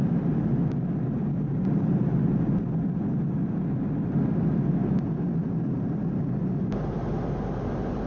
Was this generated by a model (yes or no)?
no